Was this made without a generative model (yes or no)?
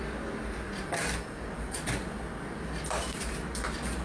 yes